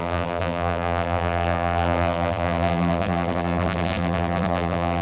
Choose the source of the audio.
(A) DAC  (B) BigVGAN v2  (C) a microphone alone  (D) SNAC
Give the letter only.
B